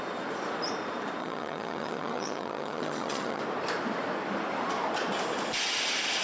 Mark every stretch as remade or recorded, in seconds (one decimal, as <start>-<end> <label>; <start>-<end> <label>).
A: 0.0-1.2 recorded; 1.2-3.4 remade; 3.4-6.2 recorded

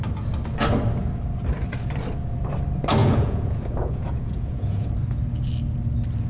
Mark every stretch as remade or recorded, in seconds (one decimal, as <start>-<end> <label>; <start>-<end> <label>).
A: 0.0-3.0 recorded; 3.0-4.9 remade; 4.9-6.3 recorded